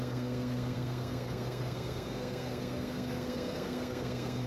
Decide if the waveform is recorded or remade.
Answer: remade